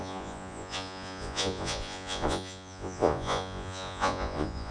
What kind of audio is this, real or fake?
fake